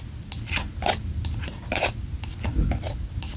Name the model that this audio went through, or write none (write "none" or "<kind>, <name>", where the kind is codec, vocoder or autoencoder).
vocoder, BigVGAN v2